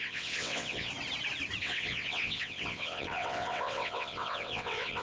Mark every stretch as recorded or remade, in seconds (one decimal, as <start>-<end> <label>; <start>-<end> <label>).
0.0-0.9 remade; 0.9-1.6 recorded; 1.6-5.0 remade

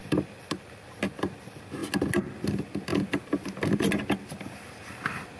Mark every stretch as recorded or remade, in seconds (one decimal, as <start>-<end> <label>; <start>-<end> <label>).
0.0-5.4 recorded

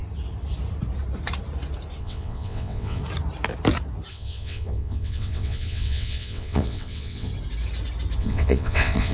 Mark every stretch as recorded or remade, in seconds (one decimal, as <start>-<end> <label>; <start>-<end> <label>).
0.0-2.0 recorded; 2.0-3.0 remade; 3.0-4.1 recorded; 4.1-7.3 remade; 7.3-8.2 recorded; 8.2-9.1 remade

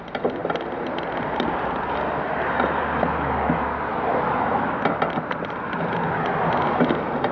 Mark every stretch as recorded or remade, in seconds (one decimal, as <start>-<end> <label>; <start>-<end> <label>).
0.0-7.3 recorded

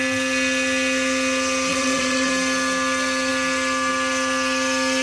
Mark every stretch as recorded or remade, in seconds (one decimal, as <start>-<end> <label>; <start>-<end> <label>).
0.0-1.7 recorded; 1.7-2.3 remade; 2.3-5.0 recorded

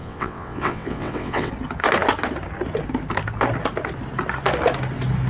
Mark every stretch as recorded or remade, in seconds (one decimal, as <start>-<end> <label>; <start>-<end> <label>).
0.0-1.5 remade; 1.5-5.3 recorded

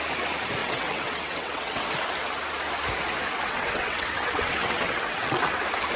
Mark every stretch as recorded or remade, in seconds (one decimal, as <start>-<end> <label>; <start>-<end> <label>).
0.0-0.6 recorded; 0.6-1.9 remade; 1.9-3.5 recorded; 3.5-5.6 remade; 5.6-6.0 recorded

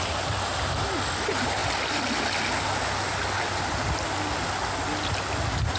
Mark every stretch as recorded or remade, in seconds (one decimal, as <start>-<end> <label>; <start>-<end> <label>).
0.0-5.8 recorded